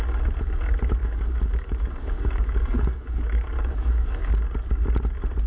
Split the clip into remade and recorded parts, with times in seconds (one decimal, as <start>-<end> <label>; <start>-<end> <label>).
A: 0.0-1.0 recorded; 1.0-4.3 remade; 4.3-5.5 recorded